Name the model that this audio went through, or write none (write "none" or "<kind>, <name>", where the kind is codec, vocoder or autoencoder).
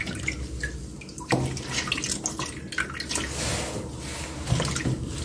none